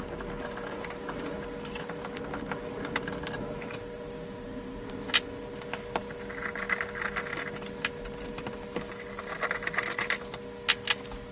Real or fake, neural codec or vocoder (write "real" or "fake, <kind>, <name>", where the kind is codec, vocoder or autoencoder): real